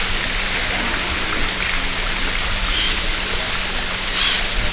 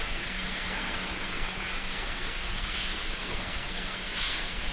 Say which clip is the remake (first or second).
second